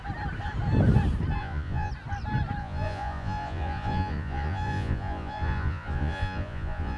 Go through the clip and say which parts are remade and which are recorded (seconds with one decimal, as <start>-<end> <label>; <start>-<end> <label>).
0.0-1.4 recorded; 1.4-1.9 remade; 1.9-2.6 recorded; 2.6-7.0 remade